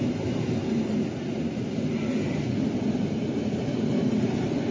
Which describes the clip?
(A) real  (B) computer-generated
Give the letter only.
A